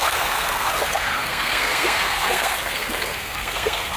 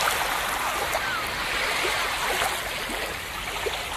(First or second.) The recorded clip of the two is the second